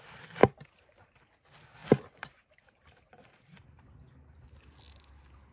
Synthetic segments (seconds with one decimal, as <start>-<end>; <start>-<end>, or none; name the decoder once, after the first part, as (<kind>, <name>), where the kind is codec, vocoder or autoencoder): 0.4-1.3 (vocoder, BigVGAN v2); 1.8-3.3